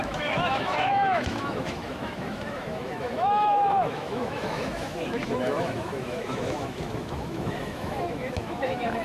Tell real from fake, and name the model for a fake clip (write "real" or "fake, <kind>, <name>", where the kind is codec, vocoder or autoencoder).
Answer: fake, autoencoder, DAC-VAE